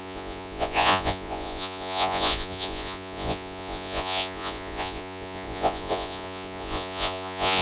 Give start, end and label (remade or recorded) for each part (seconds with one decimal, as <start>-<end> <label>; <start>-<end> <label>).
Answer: 0.0-7.6 remade